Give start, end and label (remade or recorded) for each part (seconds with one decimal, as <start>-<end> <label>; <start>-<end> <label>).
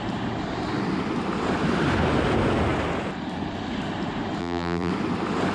0.0-4.4 recorded; 4.4-4.9 remade; 4.9-5.5 recorded